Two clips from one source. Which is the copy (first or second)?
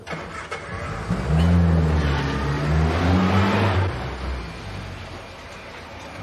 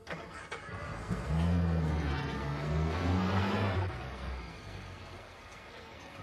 second